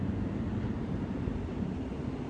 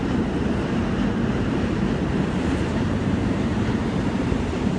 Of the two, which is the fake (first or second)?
second